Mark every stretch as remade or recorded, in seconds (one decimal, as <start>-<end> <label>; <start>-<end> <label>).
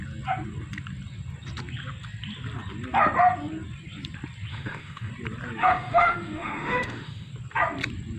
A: 0.0-4.5 recorded; 4.5-5.1 remade; 5.1-5.6 recorded; 5.6-7.3 remade; 7.3-8.2 recorded